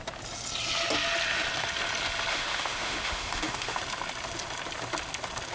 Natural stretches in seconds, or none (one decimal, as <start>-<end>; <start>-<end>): 0.0-2.3; 3.8-5.5